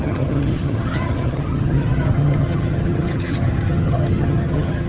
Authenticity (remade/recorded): remade